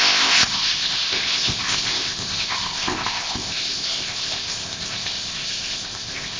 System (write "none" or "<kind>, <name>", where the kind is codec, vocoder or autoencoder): codec, ZipCodec